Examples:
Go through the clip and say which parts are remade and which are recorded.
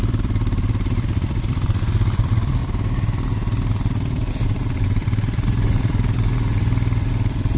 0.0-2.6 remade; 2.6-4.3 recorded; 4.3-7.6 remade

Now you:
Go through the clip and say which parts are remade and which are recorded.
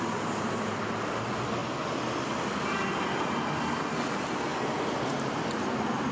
0.0-6.1 recorded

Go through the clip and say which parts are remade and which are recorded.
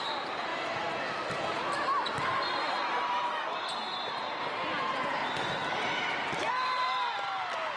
0.0-0.5 remade; 0.5-2.4 recorded; 2.4-2.8 remade; 2.8-3.8 recorded; 3.8-5.2 remade; 5.2-6.5 recorded; 6.5-7.8 remade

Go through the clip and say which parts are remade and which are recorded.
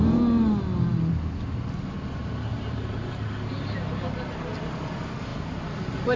0.0-2.5 recorded; 2.5-3.3 remade; 3.3-6.2 recorded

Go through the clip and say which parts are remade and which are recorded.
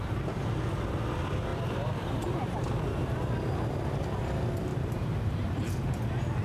0.0-1.5 recorded; 1.5-3.8 remade; 3.8-4.7 recorded; 4.7-5.7 remade; 5.7-6.4 recorded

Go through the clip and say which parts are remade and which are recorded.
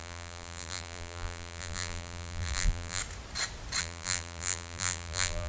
0.0-3.0 remade; 3.0-3.8 recorded; 3.8-5.5 remade